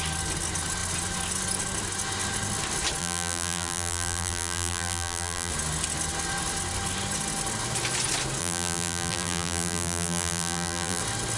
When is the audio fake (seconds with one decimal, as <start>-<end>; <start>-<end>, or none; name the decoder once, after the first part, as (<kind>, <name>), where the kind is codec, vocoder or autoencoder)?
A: 3.0-5.5 (vocoder, BigVGAN v2); 8.4-11.0